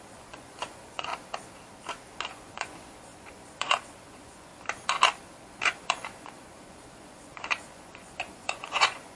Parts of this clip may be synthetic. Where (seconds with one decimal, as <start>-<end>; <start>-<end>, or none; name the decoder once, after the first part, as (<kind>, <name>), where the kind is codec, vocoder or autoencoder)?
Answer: 0.0-1.1 (vocoder, Vocos); 2.3-4.5; 5.4-9.2